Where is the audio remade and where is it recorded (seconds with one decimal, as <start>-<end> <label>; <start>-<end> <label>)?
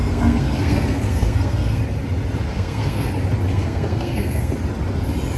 0.0-1.8 remade; 1.8-2.5 recorded; 2.5-3.1 remade; 3.1-3.5 recorded; 3.5-4.5 remade; 4.5-5.4 recorded